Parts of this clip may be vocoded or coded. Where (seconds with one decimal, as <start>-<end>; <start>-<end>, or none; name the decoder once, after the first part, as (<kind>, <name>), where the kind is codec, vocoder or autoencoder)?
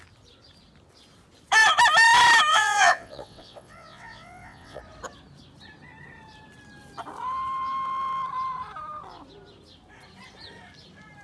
2.5-4.8 (vocoder, WaveNeXt)